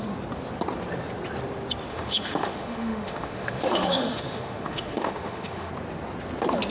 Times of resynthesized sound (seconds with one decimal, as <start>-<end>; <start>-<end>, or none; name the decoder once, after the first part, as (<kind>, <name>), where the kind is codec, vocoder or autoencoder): 1.9-5.7 (autoencoder, DAC-VAE)